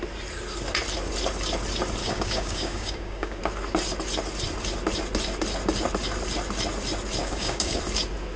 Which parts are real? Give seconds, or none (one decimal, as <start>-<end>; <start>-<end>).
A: 0.0-2.0; 3.4-7.2; 7.8-8.4